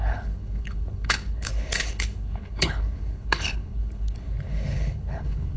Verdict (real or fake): fake